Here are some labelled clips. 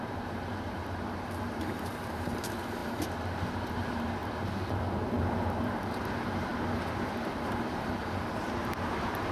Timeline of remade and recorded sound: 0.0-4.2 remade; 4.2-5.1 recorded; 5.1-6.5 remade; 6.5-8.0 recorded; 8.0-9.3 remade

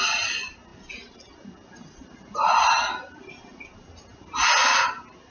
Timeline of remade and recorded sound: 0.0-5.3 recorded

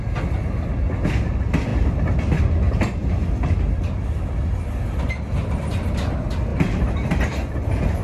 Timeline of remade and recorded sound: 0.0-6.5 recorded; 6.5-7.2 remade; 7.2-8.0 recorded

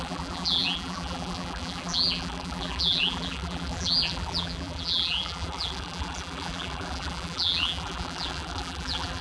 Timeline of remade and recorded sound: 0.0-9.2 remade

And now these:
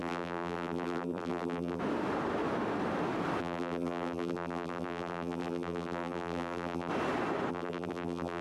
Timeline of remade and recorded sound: 0.0-1.8 remade; 1.8-3.4 recorded; 3.4-6.9 remade; 6.9-7.5 recorded; 7.5-8.4 remade